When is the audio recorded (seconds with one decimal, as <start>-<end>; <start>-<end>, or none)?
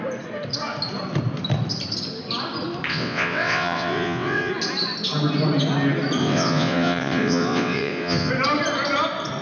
0.0-2.9; 4.5-6.2; 8.3-9.4